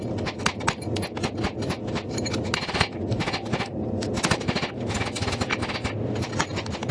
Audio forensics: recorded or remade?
recorded